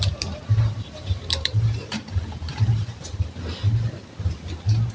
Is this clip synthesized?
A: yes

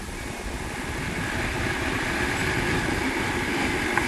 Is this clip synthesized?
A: no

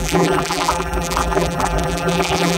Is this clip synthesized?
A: yes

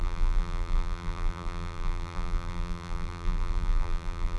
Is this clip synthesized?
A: yes